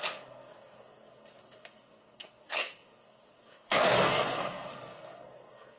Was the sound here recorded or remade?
remade